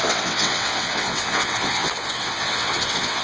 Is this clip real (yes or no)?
no